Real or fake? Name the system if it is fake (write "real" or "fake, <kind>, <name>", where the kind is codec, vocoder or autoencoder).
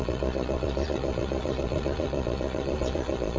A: fake, vocoder, Vocos